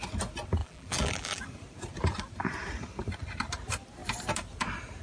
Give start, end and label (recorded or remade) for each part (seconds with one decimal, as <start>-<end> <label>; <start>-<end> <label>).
0.0-0.6 recorded; 0.6-1.4 remade; 1.4-5.0 recorded